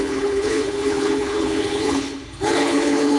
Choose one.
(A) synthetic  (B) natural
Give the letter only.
A